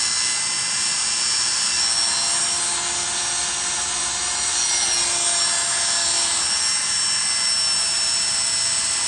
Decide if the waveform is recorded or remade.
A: recorded